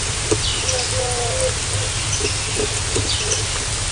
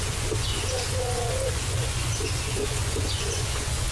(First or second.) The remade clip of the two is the second